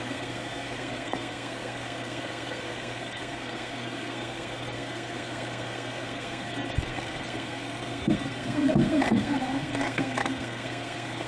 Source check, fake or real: fake